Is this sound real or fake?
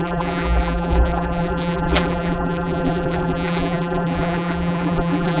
fake